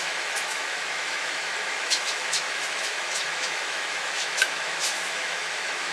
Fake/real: fake